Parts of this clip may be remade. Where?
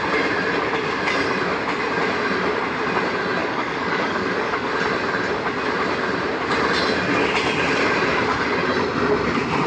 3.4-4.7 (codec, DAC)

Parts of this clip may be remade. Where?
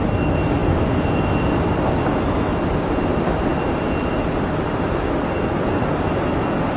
none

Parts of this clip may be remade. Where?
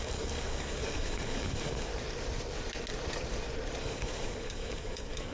0.0-1.9 (codec, DAC); 3.8-5.3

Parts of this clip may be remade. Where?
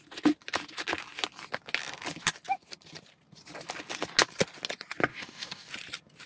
5.1-5.7 (codec, DAC)